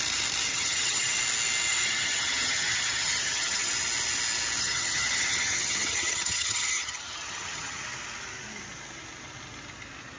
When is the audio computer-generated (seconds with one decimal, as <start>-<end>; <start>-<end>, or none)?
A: 0.5-1.2; 1.7-3.7; 4.6-7.8